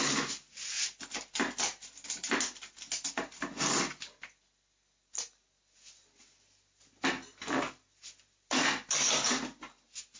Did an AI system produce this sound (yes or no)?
no